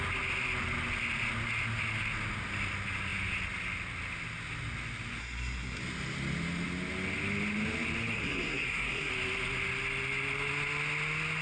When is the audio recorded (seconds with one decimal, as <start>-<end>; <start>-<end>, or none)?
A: 0.0-5.2; 5.8-8.1; 9.1-11.4